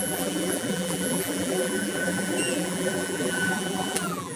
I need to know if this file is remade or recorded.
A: remade